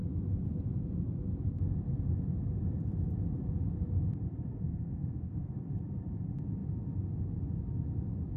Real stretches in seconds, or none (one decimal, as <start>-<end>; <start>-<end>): 0.0-4.5; 5.5-8.4